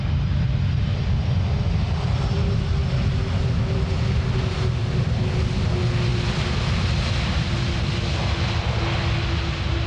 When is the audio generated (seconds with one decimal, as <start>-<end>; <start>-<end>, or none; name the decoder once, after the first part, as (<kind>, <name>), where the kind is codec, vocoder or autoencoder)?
none